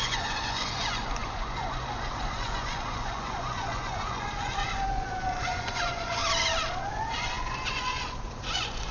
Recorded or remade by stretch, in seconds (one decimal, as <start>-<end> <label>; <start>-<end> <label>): 0.0-6.2 remade; 6.2-6.9 recorded; 6.9-8.9 remade